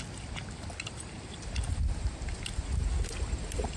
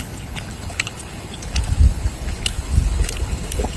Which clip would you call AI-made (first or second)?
second